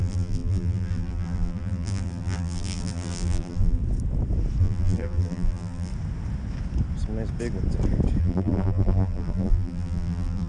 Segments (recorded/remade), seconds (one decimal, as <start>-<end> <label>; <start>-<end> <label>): 0.0-3.8 remade; 3.8-4.6 recorded; 4.6-5.9 remade; 5.9-8.2 recorded; 8.2-10.5 remade